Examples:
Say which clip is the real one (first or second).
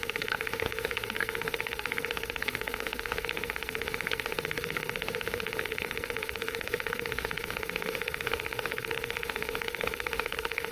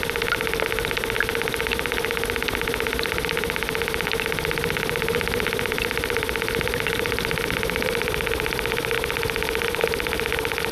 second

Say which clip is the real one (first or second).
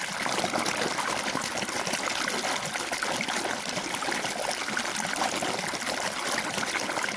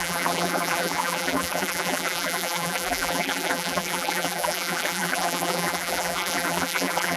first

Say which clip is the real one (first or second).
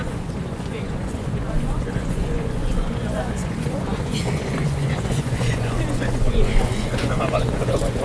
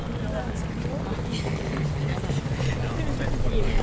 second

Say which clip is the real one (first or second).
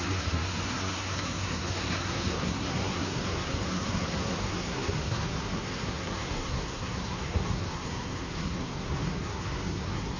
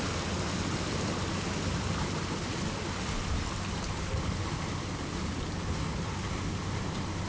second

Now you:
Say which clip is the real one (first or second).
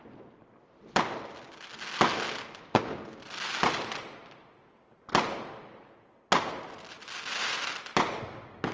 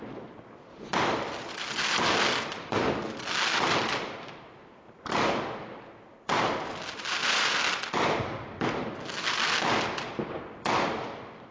first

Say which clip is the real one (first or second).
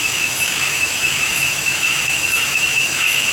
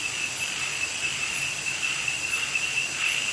second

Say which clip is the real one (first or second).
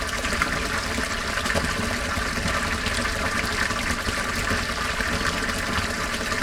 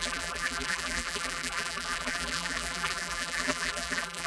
first